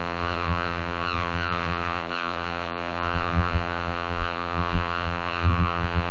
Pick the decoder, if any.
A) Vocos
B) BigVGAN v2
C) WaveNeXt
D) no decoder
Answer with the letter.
B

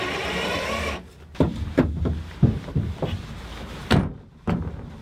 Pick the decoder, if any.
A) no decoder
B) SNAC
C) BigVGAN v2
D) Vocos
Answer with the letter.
C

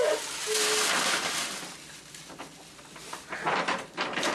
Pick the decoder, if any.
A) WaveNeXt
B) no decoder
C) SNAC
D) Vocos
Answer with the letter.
B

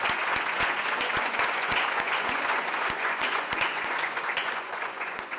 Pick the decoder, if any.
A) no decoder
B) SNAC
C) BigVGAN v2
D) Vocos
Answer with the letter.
D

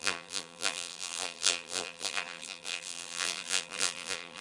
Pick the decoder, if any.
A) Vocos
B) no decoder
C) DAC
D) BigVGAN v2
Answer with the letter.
D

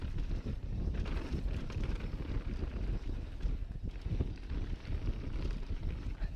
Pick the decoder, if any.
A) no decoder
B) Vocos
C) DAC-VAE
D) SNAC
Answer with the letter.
A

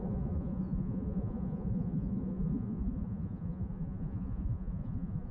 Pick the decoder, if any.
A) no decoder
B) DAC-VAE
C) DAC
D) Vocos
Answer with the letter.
D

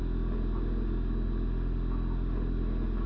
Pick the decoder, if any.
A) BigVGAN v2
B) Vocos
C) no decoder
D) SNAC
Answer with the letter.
C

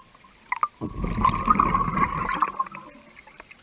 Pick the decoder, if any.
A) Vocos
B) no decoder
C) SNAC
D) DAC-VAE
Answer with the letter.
B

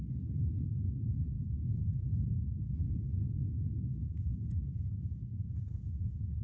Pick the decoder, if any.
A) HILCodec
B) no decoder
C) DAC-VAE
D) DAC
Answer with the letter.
A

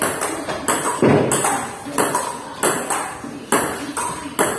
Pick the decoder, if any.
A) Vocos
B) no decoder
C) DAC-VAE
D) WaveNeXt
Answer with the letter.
B